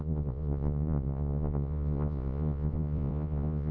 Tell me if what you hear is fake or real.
fake